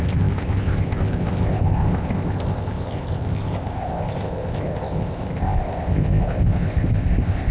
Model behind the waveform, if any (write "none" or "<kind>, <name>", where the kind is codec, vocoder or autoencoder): codec, ZipCodec